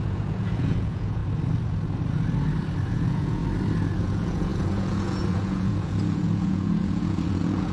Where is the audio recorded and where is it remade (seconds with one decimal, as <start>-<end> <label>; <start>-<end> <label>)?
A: 0.0-1.2 remade; 1.2-2.9 recorded; 2.9-3.4 remade; 3.4-4.0 recorded; 4.0-7.7 remade